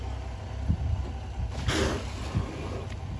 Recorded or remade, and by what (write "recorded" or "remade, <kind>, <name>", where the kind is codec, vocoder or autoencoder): recorded